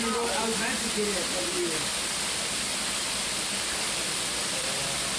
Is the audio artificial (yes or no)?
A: no